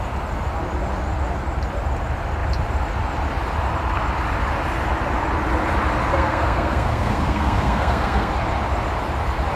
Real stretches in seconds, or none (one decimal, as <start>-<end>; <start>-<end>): 0.0-6.1; 8.3-9.6